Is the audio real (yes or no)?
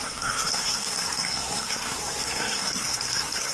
no